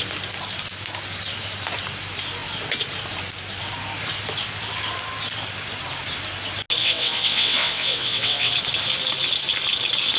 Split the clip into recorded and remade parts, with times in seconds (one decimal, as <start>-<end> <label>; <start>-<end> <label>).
0.0-6.8 recorded; 6.8-8.5 remade; 8.5-10.2 recorded